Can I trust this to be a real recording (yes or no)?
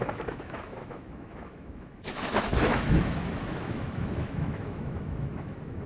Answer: no